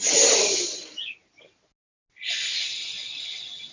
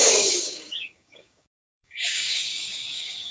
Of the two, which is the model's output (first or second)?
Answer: second